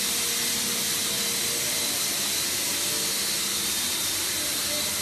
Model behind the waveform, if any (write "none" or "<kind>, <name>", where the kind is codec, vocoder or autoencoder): none